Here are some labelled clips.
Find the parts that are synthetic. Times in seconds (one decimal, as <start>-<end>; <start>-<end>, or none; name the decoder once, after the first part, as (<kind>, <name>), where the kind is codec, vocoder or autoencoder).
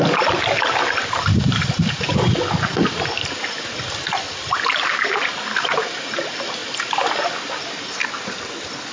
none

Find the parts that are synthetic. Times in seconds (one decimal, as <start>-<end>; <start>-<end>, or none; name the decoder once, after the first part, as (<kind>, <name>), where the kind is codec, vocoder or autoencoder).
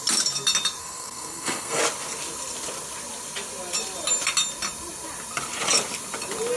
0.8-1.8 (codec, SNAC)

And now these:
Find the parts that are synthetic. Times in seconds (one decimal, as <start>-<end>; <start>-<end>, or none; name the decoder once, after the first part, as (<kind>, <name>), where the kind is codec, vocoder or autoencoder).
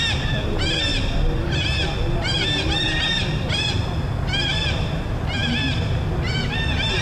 none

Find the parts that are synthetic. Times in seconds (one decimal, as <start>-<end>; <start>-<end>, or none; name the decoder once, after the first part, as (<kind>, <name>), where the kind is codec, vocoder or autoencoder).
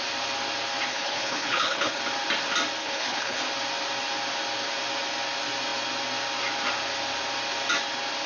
0.9-2.0 (codec, HILCodec); 2.8-3.4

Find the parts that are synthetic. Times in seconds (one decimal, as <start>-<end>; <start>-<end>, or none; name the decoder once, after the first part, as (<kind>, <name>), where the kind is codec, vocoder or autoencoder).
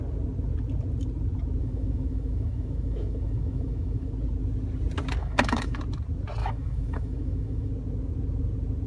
1.6-4.1 (autoencoder, DAC-VAE); 5.2-5.8; 6.4-7.7